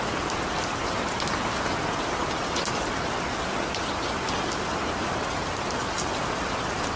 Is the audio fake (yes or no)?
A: no